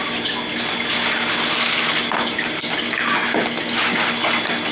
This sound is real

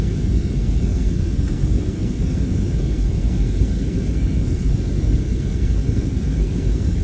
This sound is fake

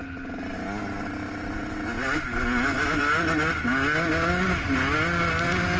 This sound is real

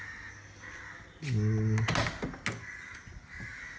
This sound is real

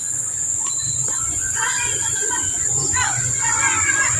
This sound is fake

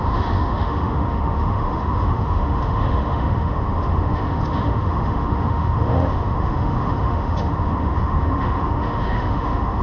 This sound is fake